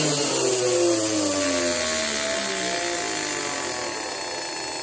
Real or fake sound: real